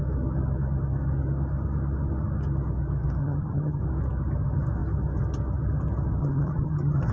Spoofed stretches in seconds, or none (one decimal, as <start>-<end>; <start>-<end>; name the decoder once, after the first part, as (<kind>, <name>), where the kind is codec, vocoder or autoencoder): 3.2-3.8 (vocoder, HiFi-GAN); 6.2-7.1